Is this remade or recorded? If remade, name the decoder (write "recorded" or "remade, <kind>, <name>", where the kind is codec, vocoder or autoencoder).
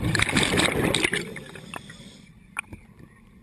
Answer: recorded